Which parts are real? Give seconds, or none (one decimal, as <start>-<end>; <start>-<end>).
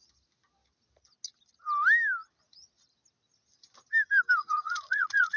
0.0-4.4